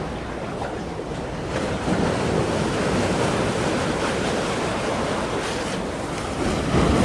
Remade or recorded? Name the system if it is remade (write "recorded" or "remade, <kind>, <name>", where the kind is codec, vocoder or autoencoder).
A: recorded